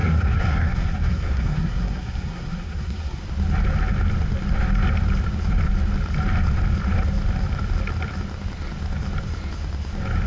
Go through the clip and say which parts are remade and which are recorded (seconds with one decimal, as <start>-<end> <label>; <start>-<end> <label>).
0.0-3.2 remade; 3.2-10.3 recorded